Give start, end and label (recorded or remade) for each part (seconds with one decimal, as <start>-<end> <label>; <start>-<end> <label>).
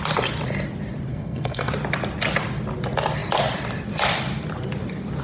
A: 0.0-1.1 recorded; 1.1-1.7 remade; 1.7-5.2 recorded